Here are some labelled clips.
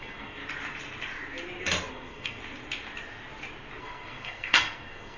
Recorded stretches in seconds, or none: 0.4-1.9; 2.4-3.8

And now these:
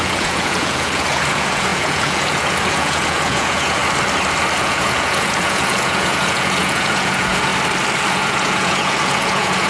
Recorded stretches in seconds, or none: 3.8-4.6; 7.5-8.1

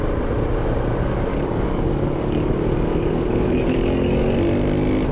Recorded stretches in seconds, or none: 0.0-1.3; 4.3-5.1

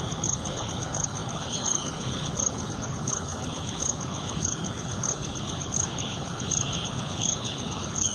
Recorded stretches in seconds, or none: none

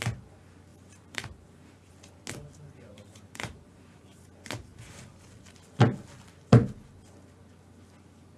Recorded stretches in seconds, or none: 0.0-0.7; 1.9-2.9; 4.2-8.4